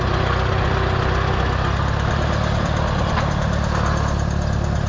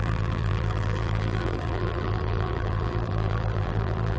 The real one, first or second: first